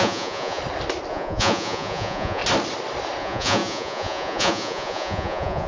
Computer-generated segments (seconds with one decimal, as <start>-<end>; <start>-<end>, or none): 0.0-0.6; 1.1-2.4; 3.2-5.7